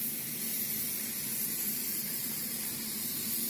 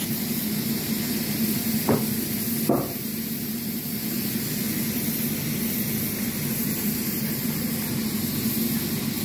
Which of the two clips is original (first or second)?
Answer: second